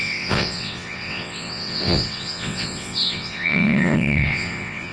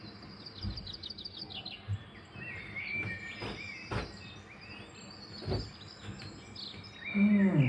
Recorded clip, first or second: second